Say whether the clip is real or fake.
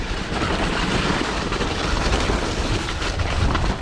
fake